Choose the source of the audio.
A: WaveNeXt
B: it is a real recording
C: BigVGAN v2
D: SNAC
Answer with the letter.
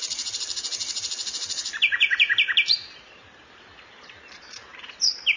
C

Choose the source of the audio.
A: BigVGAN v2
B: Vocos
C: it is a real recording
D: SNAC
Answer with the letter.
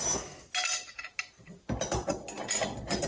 C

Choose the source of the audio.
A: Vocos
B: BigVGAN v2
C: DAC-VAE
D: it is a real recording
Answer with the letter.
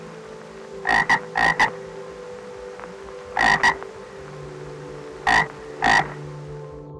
D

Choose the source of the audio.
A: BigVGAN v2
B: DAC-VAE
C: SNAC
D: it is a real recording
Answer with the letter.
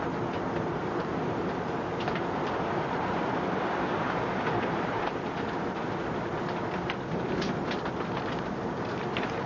A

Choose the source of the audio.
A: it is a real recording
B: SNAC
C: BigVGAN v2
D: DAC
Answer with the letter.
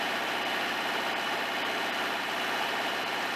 A